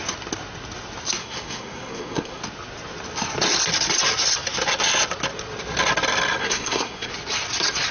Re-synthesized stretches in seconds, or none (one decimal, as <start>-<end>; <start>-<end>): 1.2-2.4; 6.4-7.1